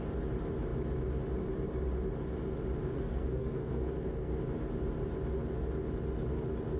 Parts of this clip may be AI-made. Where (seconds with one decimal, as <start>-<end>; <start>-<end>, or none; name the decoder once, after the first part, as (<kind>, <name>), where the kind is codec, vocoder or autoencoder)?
2.8-4.4 (codec, SNAC)